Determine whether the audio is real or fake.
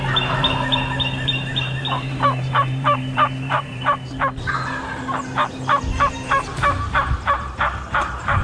fake